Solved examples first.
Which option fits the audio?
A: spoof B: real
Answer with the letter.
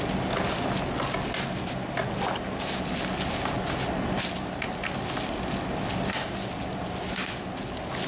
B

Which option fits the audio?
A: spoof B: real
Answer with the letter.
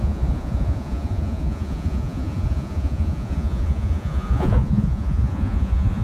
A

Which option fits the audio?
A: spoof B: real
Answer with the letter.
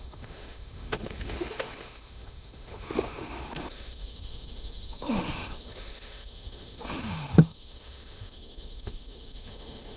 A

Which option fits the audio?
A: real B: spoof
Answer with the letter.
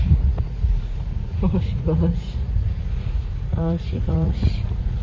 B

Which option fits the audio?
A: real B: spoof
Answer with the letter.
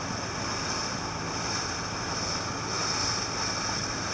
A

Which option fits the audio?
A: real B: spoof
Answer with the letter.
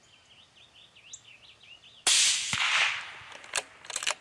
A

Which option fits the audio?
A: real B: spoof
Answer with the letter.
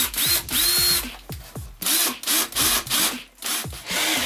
A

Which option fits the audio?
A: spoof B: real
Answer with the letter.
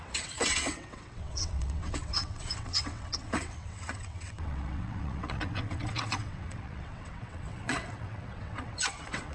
A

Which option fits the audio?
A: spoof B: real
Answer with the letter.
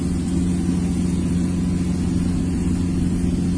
B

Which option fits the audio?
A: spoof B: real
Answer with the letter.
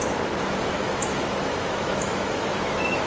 A